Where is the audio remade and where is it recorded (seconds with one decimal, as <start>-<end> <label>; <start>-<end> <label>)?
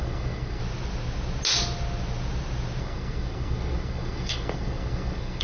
0.0-0.6 remade; 0.6-2.8 recorded; 2.8-5.4 remade